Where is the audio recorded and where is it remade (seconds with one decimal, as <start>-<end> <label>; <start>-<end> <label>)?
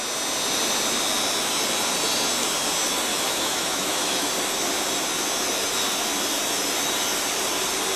0.0-3.1 recorded; 3.1-4.3 remade; 4.3-8.0 recorded